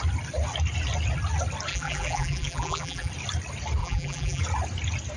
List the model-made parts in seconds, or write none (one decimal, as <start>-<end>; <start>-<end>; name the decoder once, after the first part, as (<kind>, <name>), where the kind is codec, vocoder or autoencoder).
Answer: 1.7-3.1 (vocoder, BigVGAN v2); 3.8-4.4